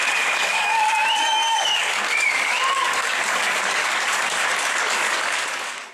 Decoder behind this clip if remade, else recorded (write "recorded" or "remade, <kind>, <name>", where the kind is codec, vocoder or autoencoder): remade, codec, DAC